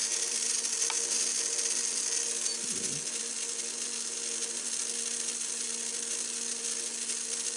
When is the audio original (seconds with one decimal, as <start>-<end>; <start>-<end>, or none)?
0.0-7.6